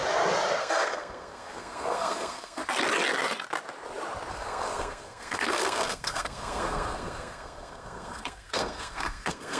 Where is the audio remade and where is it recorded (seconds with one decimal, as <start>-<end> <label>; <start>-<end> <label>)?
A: 0.0-0.6 recorded; 0.6-2.6 remade; 2.6-4.3 recorded; 4.3-9.6 remade